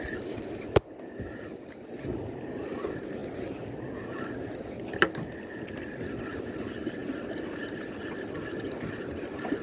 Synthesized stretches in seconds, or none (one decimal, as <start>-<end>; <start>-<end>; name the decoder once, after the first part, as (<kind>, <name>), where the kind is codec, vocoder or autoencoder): 0.0-3.2 (vocoder, BigVGAN v2); 3.7-9.6